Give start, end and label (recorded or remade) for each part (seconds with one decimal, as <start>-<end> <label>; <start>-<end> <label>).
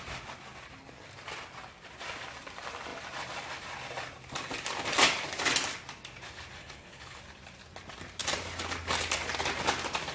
0.0-6.6 recorded; 6.6-7.2 remade; 7.2-10.1 recorded